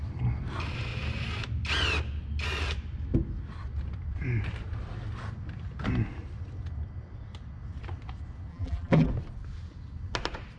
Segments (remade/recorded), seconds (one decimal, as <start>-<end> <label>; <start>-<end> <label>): 0.0-8.5 recorded; 8.5-9.1 remade; 9.1-10.6 recorded